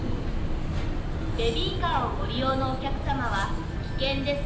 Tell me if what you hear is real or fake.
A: real